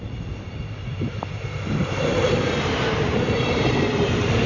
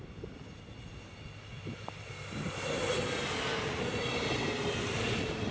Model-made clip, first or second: first